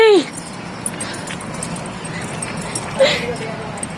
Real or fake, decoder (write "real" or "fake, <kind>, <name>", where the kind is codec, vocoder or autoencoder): real